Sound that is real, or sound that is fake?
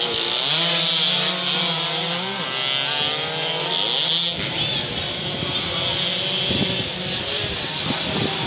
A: real